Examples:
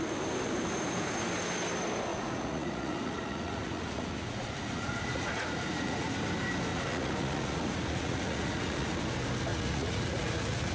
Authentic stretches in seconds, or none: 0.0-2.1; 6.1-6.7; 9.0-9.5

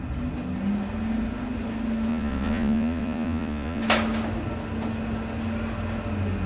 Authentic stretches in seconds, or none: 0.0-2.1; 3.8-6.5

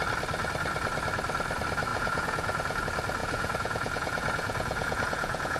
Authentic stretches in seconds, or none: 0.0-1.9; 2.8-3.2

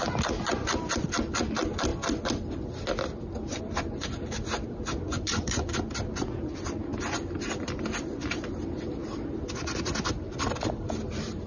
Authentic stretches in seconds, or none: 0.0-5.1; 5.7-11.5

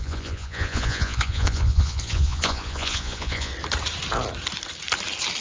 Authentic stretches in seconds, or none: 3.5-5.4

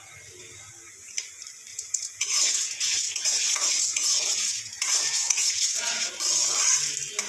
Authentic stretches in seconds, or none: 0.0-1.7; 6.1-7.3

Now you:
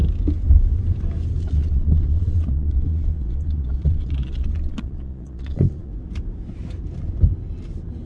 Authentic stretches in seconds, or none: 0.0-1.4; 5.9-8.1

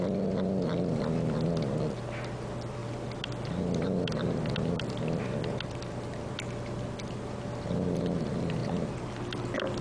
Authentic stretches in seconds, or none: 0.0-9.8